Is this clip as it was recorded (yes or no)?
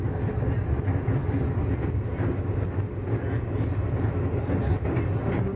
yes